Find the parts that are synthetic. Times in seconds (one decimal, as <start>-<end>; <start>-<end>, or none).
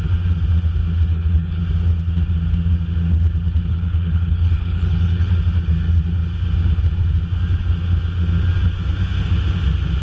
1.1-1.6; 3.7-5.3